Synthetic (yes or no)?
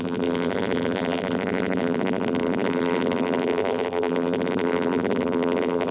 yes